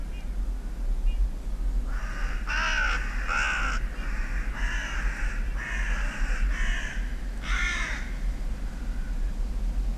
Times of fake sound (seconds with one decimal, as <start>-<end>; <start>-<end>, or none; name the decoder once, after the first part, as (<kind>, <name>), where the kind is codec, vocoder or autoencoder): 4.8-5.5 (vocoder, BigVGAN v2)

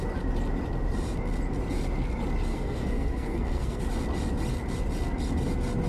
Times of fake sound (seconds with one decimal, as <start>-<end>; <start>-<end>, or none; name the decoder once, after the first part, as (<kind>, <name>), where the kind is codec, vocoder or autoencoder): 2.5-3.8 (codec, SNAC)

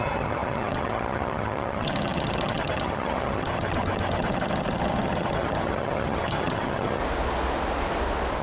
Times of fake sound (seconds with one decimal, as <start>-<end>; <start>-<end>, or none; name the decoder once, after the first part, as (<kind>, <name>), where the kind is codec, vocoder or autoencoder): 0.0-7.0 (vocoder, HiFi-GAN)

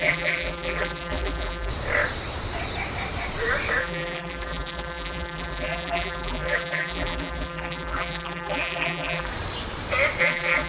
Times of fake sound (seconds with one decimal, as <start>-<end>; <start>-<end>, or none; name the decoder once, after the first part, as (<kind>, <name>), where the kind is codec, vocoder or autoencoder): 0.0-1.7 (vocoder, BigVGAN v2); 3.8-9.3; 10.2-10.7

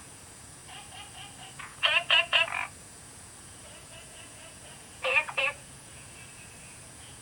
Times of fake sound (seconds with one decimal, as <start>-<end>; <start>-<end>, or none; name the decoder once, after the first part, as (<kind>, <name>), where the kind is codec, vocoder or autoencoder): 0.0-0.6 (vocoder, Vocos); 1.5-7.2

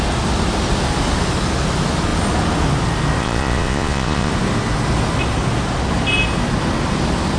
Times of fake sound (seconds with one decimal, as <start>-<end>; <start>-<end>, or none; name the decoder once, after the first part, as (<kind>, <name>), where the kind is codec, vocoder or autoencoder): 3.2-4.3 (vocoder, Vocos)